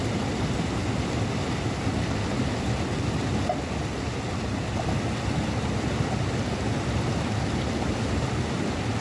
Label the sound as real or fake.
real